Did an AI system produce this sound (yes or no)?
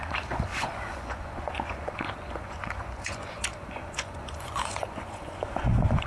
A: yes